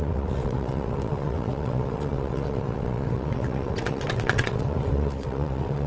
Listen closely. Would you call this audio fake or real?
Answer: fake